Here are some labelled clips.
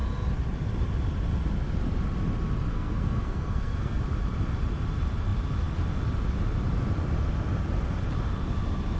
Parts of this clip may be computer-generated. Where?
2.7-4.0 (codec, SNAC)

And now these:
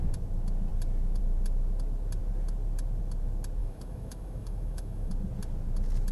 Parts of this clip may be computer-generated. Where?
3.6-5.1 (autoencoder, DAC-VAE)

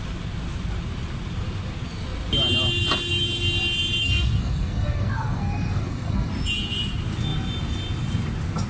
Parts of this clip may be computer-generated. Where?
4.0-6.3 (codec, SNAC)

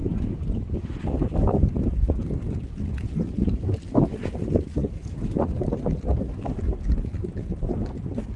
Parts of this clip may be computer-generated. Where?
4.8-5.7 (vocoder, BigVGAN v2)

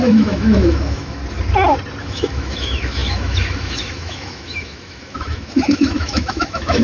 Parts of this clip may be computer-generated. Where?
0.0-1.2 (autoencoder, DAC-VAE); 2.0-6.8

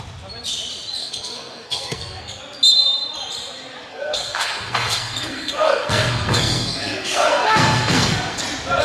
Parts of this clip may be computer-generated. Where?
1.0-2.4 (codec, SNAC); 3.9-8.4

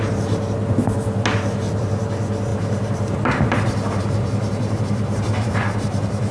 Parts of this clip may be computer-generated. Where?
2.5-6.3 (vocoder, BigVGAN v2)

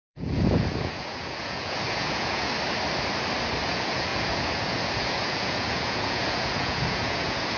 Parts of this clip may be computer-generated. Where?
0.0-2.5 (vocoder, Vocos); 3.6-7.6